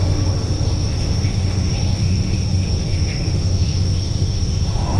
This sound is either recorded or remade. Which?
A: remade